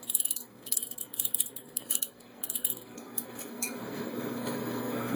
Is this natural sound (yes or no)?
no